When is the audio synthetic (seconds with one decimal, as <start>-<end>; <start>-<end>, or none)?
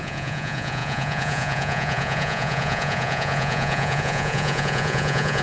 0.0-5.4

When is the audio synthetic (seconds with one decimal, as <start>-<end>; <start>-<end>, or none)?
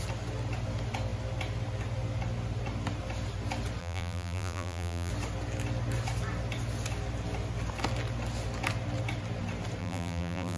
3.8-5.1; 9.8-10.6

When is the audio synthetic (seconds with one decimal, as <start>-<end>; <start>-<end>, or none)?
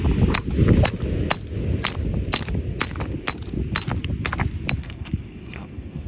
4.8-6.1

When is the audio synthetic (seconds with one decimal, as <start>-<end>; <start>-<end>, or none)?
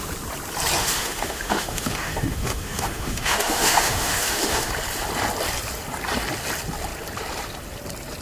0.8-4.7